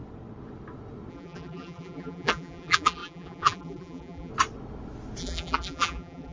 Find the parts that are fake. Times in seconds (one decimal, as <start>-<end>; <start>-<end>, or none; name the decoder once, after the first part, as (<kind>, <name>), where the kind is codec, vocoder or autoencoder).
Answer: 1.1-4.3 (vocoder, BigVGAN v2); 5.2-6.3